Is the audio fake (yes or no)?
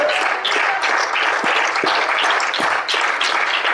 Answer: no